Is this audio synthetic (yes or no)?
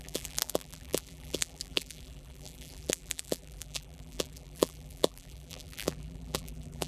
yes